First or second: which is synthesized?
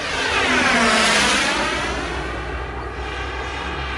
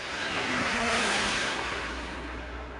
second